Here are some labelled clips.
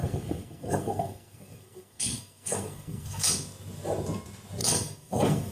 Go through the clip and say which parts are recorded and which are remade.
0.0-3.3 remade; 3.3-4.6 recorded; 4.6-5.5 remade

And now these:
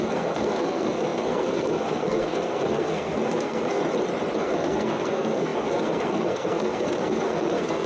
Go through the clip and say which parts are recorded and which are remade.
0.0-3.8 remade; 3.8-4.4 recorded; 4.4-7.9 remade

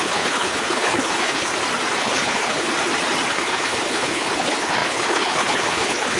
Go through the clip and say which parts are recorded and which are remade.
0.0-1.5 remade; 1.5-2.0 recorded; 2.0-2.7 remade; 2.7-3.3 recorded; 3.3-6.2 remade